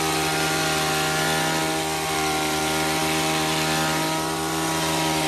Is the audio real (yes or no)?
yes